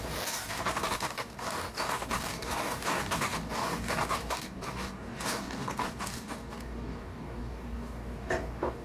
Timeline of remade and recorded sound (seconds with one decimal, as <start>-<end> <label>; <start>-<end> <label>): 0.0-8.8 remade